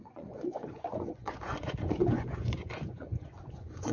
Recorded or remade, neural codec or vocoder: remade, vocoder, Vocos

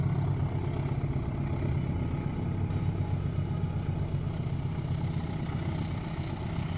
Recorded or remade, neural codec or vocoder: recorded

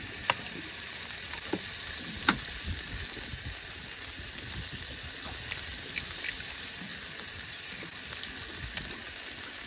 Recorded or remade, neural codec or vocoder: recorded